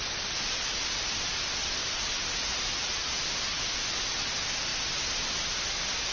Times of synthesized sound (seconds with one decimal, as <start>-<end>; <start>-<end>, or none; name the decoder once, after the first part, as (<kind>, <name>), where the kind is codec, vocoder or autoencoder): none